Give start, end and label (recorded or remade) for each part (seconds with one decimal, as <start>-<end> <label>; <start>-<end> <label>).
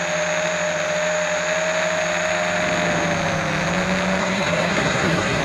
0.0-4.2 recorded; 4.2-5.4 remade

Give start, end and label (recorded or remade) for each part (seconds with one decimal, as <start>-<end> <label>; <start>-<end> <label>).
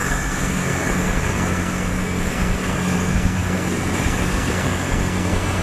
0.0-5.6 remade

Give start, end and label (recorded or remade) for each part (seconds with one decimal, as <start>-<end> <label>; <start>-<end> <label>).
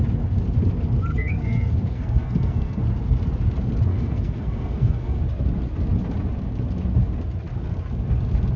0.0-1.1 recorded; 1.1-2.8 remade; 2.8-3.9 recorded; 3.9-5.2 remade; 5.2-8.6 recorded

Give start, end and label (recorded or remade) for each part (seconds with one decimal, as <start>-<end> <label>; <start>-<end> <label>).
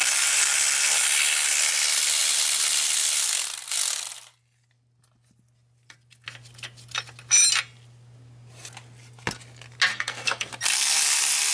0.0-9.9 recorded; 9.9-10.5 remade; 10.5-11.5 recorded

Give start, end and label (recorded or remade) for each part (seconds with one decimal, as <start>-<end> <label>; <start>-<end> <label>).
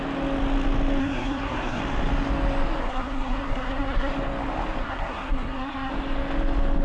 0.0-1.0 recorded; 1.0-1.8 remade; 1.8-2.8 recorded; 2.8-4.1 remade; 4.1-4.8 recorded; 4.8-5.9 remade; 5.9-6.8 recorded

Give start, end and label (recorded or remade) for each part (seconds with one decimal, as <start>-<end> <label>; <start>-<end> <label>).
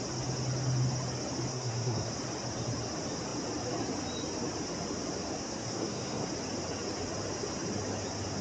0.0-1.5 recorded; 1.5-2.1 remade; 2.1-5.4 recorded; 5.4-6.3 remade; 6.3-8.4 recorded